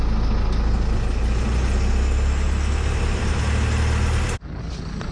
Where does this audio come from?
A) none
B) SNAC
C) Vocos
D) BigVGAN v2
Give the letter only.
A